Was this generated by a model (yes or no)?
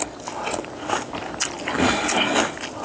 no